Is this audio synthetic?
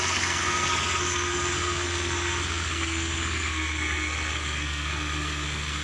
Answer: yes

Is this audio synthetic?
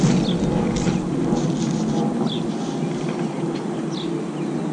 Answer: no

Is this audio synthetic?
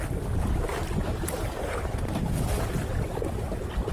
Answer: no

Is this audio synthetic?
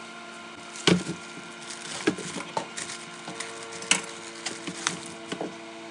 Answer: no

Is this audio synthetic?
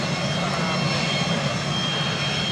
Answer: no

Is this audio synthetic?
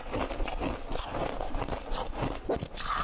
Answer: no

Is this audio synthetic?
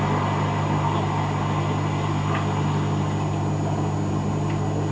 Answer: no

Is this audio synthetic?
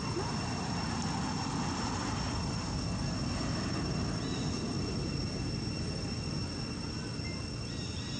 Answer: no